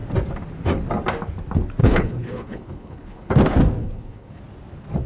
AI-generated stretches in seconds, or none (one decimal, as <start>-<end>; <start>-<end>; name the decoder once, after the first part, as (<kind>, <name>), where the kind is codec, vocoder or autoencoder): 1.8-3.3 (codec, HILCodec); 3.8-4.4